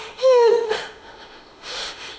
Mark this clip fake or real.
fake